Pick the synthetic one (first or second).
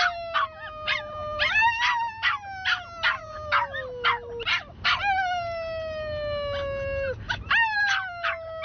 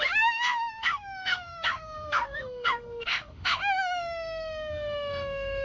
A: second